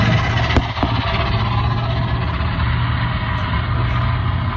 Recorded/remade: recorded